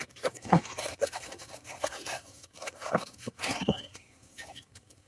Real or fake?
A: fake